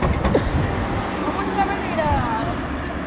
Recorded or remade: recorded